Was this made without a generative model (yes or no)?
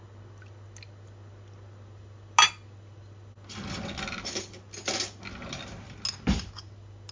yes